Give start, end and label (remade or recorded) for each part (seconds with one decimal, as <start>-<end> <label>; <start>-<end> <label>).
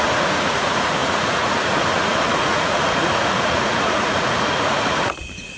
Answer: 0.0-5.6 remade